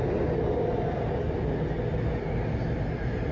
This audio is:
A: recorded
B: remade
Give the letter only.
A